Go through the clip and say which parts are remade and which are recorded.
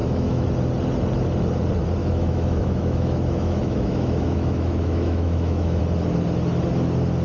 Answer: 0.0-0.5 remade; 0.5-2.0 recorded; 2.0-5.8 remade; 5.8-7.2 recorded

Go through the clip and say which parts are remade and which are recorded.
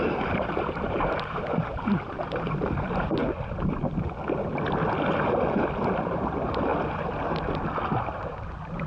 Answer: 0.0-3.2 remade; 3.2-6.0 recorded; 6.0-6.7 remade; 6.7-8.0 recorded; 8.0-8.9 remade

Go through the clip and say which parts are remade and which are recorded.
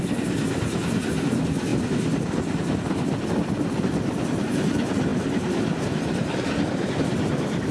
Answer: 0.0-7.7 recorded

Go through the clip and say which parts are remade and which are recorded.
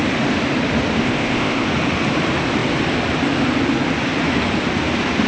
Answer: 0.0-1.0 recorded; 1.0-1.7 remade; 1.7-5.3 recorded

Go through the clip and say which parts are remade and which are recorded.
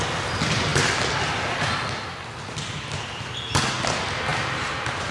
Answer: 0.0-4.3 recorded; 4.3-5.1 remade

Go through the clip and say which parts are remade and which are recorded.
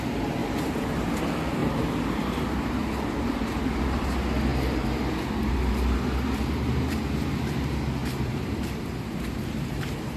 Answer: 0.0-0.4 recorded; 0.4-1.2 remade; 1.2-1.6 recorded; 1.6-3.6 remade; 3.6-8.0 recorded; 8.0-10.2 remade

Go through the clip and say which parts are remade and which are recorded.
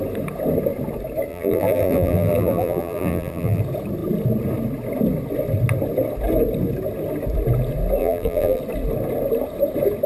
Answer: 0.0-1.3 recorded; 1.3-3.6 remade; 3.6-8.0 recorded; 8.0-8.6 remade; 8.6-10.1 recorded